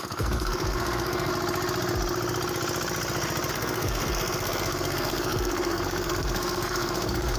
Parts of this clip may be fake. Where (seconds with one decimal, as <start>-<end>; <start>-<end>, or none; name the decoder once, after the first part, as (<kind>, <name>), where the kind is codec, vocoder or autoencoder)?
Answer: 0.0-1.3 (codec, SNAC); 3.5-7.4